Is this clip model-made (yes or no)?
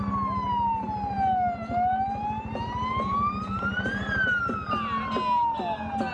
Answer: no